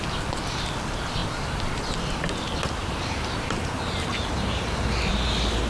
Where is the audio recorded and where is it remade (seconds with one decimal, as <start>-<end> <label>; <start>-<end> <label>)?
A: 0.0-2.8 recorded; 2.8-5.0 remade; 5.0-5.7 recorded